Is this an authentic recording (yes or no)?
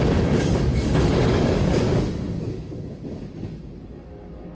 no